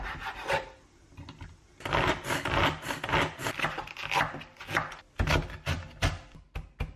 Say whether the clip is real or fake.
real